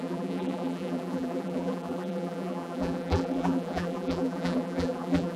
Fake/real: fake